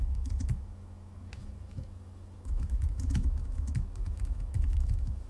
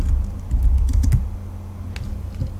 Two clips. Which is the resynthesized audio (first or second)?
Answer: first